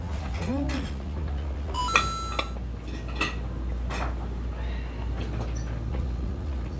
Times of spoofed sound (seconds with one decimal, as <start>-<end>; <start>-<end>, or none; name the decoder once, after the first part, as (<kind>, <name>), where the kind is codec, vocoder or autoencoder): 0.0-1.8 (vocoder, Vocos); 5.9-6.8